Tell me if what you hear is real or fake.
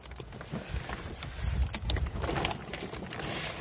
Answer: real